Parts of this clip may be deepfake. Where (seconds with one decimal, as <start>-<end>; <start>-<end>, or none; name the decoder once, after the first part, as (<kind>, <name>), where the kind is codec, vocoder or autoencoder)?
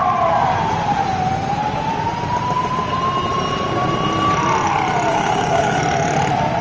5.1-5.8 (codec, DAC)